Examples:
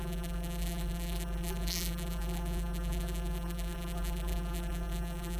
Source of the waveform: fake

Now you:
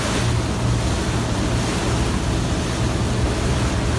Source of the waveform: real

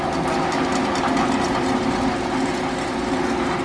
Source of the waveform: fake